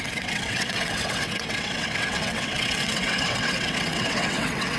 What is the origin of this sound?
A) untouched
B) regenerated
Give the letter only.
B